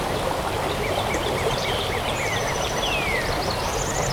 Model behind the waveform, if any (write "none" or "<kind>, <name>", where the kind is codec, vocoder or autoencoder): none